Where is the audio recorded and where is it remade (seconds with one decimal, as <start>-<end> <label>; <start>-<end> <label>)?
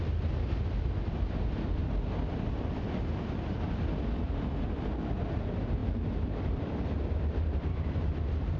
0.0-8.6 remade